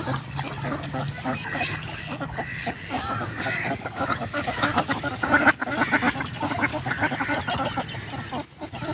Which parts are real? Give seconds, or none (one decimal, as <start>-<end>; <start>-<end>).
0.0-0.9; 5.4-6.7; 7.4-8.9